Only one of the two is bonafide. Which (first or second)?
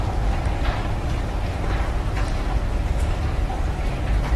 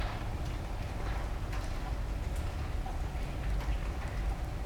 second